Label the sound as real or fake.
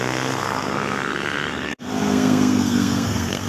fake